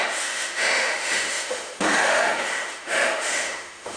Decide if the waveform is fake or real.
fake